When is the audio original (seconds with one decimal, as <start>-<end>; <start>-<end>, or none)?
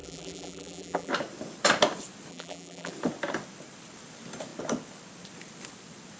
1.1-2.3; 2.9-6.2